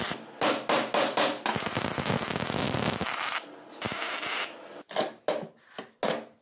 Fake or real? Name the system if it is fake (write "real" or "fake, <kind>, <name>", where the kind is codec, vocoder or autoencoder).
real